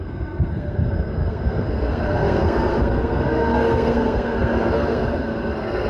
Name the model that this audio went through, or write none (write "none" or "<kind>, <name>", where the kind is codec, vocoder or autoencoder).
codec, SNAC